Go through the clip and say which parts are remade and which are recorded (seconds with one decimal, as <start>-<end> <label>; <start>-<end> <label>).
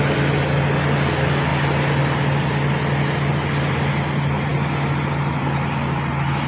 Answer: 0.0-6.5 recorded